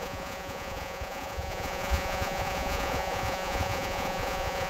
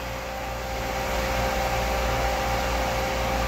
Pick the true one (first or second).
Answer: second